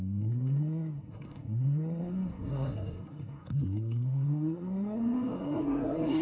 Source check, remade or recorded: remade